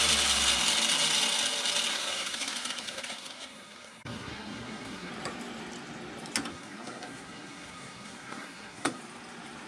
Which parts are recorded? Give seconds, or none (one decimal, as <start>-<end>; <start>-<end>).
0.0-1.9; 5.1-6.5; 9.0-9.7